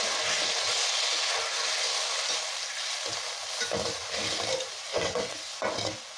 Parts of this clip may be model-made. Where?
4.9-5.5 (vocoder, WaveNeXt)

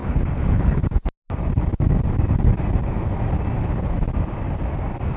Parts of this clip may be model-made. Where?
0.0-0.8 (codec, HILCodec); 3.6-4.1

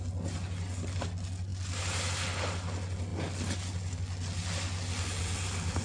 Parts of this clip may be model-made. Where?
none

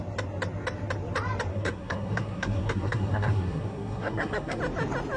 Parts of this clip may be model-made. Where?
1.5-4.6 (codec, SNAC)

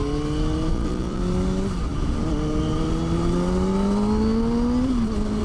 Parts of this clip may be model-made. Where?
0.7-1.2 (vocoder, Vocos)

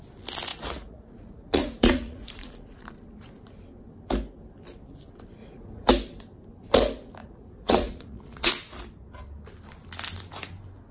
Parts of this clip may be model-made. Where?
0.5-2.9 (vocoder, Vocos); 5.4-5.9; 7.2-8.5